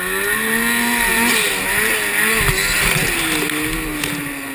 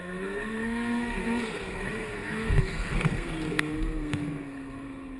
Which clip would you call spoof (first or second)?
second